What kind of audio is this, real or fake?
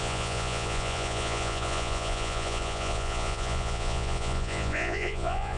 fake